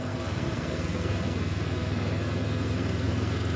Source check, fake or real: fake